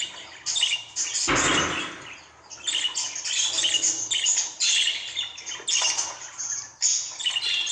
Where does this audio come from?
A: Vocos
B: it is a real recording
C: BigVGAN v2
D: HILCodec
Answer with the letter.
B